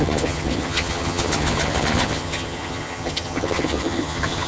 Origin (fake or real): fake